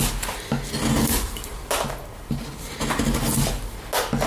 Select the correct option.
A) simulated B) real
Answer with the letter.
B